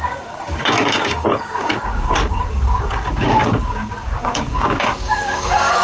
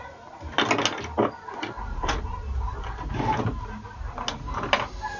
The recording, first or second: second